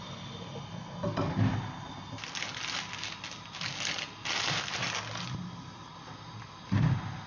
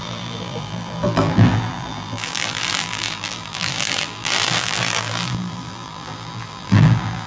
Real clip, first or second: first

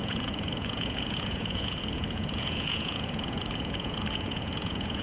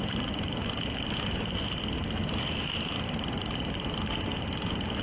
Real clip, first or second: second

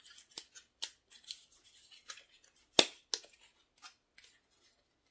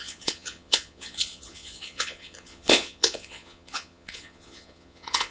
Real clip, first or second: first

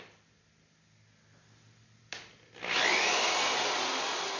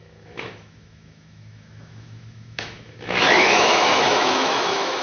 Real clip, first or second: first